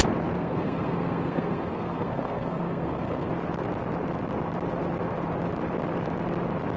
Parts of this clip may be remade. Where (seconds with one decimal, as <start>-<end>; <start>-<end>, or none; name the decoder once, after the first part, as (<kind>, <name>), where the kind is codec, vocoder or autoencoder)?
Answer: 0.4-3.3 (codec, SNAC)